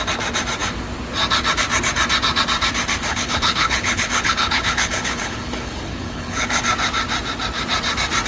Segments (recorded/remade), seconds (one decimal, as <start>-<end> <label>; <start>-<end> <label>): 0.0-3.0 recorded; 3.0-6.6 remade; 6.6-8.3 recorded